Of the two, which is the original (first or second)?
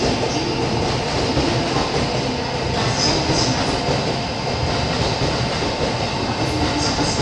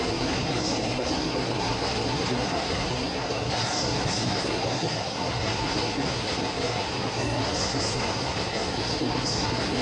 first